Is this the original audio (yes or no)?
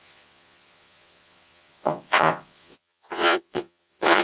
no